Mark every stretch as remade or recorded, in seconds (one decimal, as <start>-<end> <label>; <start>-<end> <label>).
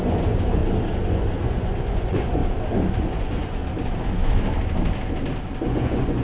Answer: 0.0-0.6 remade; 0.6-1.1 recorded; 1.1-2.4 remade; 2.4-3.0 recorded; 3.0-3.6 remade; 3.6-5.6 recorded; 5.6-6.2 remade